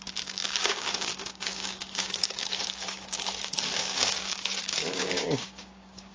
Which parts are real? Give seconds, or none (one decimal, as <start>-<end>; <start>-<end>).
none